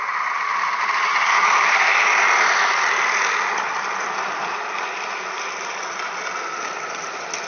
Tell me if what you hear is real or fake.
real